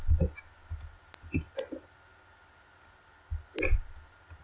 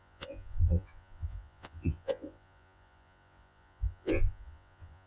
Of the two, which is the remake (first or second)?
second